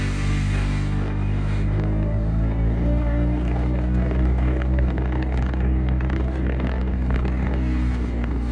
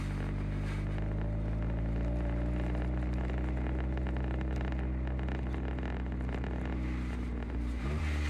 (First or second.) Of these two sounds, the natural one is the second